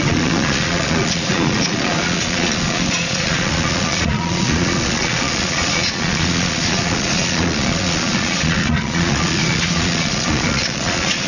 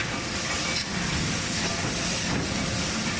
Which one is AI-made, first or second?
first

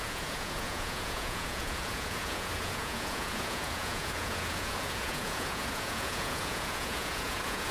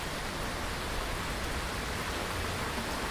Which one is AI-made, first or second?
first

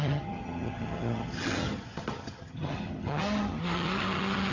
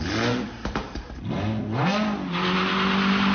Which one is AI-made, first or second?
first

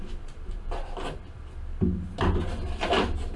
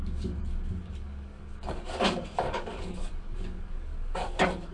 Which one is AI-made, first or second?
second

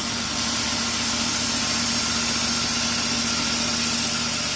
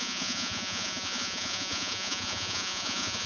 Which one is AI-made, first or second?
second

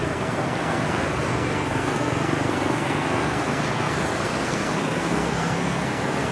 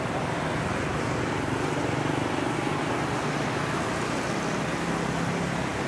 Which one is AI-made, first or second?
first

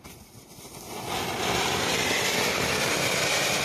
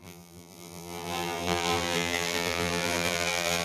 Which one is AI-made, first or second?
second